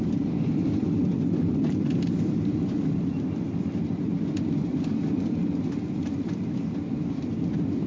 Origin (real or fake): fake